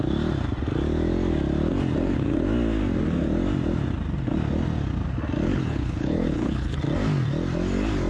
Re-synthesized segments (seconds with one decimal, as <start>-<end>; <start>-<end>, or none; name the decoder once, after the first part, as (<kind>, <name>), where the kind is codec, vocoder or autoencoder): 5.5-6.8 (codec, HILCodec)